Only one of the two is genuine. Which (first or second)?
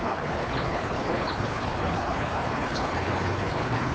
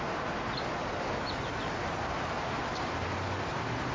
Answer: second